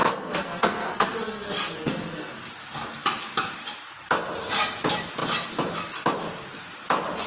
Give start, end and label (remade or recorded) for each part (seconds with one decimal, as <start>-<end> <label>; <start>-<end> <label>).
0.0-2.5 remade; 2.5-7.3 recorded

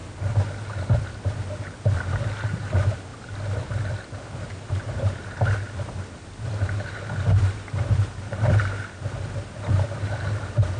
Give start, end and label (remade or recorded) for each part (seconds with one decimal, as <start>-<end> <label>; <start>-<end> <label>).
0.0-10.8 recorded

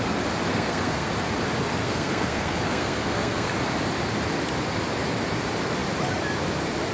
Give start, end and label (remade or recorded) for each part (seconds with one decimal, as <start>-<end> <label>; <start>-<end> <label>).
0.0-0.5 recorded; 0.5-1.1 remade; 1.1-1.8 recorded; 1.8-3.5 remade; 3.5-6.9 recorded